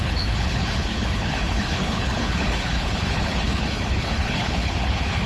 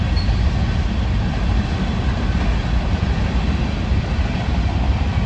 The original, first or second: second